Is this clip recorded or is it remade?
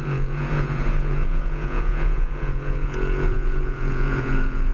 remade